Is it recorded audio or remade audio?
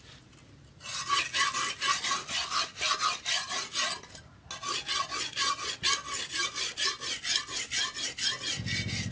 recorded